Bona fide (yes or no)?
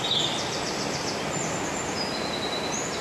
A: yes